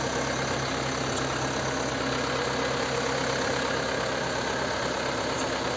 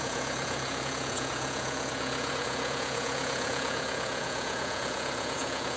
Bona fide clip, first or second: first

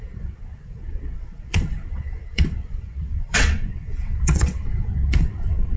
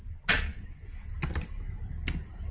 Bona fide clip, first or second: second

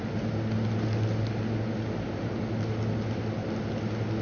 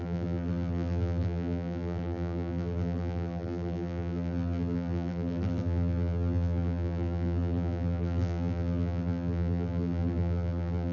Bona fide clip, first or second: first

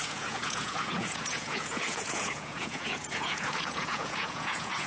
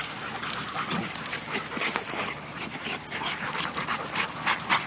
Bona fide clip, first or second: second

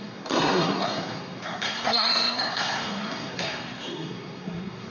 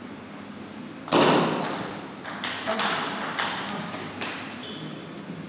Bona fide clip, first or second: second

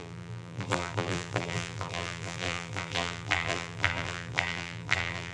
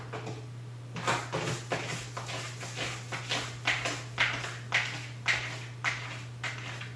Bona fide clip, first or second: second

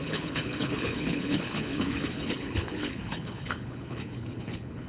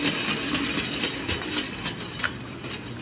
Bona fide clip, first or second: second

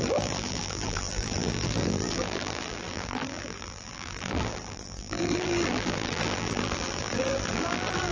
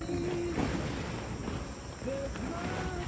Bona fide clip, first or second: second